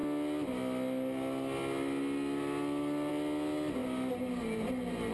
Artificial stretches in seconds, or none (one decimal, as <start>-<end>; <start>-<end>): none